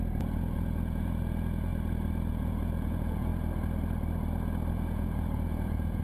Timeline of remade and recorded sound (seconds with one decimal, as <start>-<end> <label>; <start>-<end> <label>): 0.0-1.7 remade; 1.7-2.3 recorded; 2.3-3.3 remade; 3.3-4.7 recorded; 4.7-6.0 remade